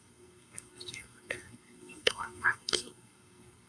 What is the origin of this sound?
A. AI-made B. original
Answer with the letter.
A